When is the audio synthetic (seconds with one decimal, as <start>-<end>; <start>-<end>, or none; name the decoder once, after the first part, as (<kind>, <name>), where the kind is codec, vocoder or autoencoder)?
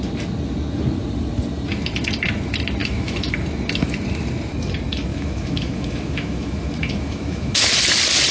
2.8-3.3 (autoencoder, DAC-VAE); 5.1-7.7